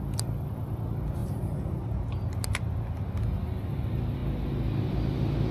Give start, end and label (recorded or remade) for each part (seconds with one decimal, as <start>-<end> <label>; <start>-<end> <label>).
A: 0.0-1.2 recorded; 1.2-2.3 remade; 2.3-5.5 recorded